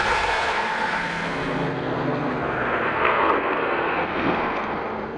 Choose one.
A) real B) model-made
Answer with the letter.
B